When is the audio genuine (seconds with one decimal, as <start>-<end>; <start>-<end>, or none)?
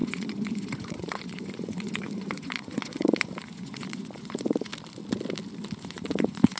4.7-5.8